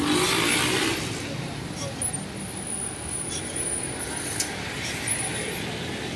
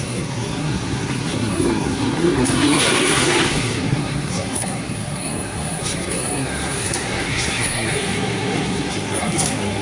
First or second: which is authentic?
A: first